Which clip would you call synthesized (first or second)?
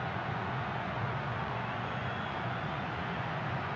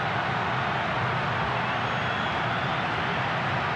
first